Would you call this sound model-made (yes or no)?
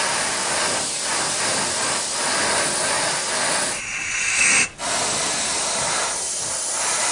no